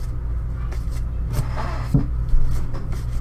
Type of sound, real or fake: real